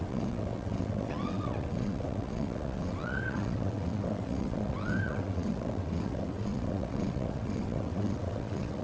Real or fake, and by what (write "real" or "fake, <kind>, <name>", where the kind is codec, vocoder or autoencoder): fake, vocoder, WaveNeXt